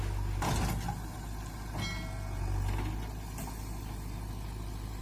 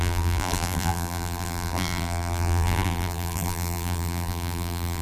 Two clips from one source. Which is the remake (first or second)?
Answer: second